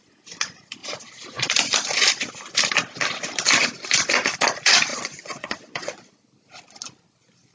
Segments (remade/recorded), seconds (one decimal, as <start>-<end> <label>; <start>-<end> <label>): 0.0-4.9 recorded; 4.9-6.1 remade; 6.1-7.5 recorded